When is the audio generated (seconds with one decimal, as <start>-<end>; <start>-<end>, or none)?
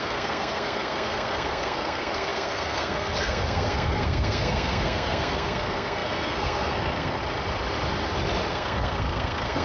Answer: 0.0-7.2; 8.5-9.6